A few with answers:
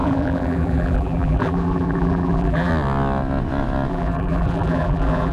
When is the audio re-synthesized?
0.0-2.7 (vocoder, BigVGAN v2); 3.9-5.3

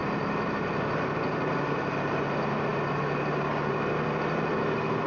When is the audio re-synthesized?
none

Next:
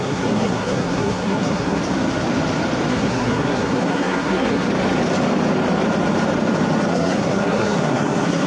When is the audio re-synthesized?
0.0-1.8 (codec, SNAC); 2.9-4.7; 6.9-8.5

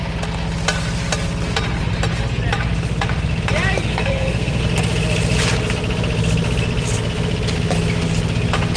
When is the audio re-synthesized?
3.9-4.6 (codec, SNAC)

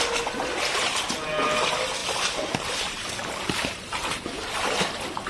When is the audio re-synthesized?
2.0-4.2 (vocoder, BigVGAN v2)

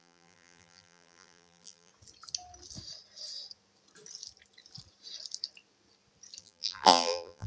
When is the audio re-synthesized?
0.0-1.9 (vocoder, BigVGAN v2); 6.4-7.5

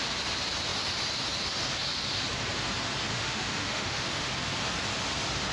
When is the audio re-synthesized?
3.1-4.3 (autoencoder, DAC-VAE)

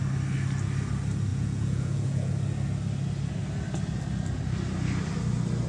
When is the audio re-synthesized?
1.3-2.3 (vocoder, Vocos)